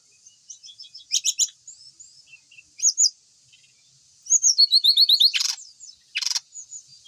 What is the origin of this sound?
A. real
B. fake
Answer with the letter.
A